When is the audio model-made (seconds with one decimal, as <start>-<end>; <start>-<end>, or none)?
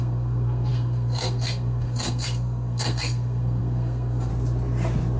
0.0-4.3